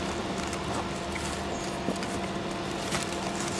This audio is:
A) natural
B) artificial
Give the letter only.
A